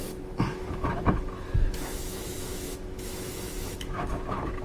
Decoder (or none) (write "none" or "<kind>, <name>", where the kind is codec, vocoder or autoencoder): autoencoder, DAC-VAE